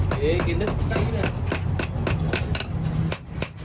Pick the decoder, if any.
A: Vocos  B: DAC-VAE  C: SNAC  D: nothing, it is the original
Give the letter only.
D